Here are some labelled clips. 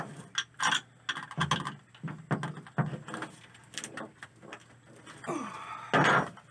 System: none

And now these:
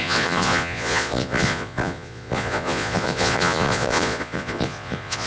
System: vocoder, Vocos